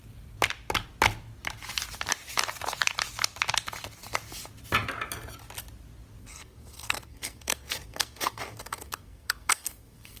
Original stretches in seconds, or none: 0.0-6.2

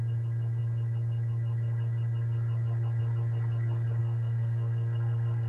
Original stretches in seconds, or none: 0.0-4.0